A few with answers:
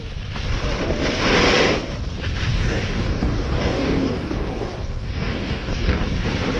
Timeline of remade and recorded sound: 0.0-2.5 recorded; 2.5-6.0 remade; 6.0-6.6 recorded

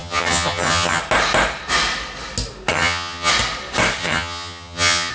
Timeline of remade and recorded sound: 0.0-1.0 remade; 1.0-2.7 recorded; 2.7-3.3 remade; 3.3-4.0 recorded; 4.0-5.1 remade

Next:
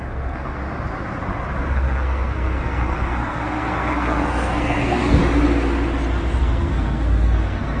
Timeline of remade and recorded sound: 0.0-0.6 remade; 0.6-1.7 recorded; 1.7-5.2 remade; 5.2-6.4 recorded; 6.4-7.8 remade

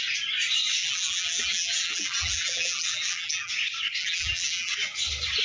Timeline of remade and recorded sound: 0.0-0.8 recorded; 0.8-3.5 remade; 3.5-4.0 recorded; 4.0-4.7 remade; 4.7-5.4 recorded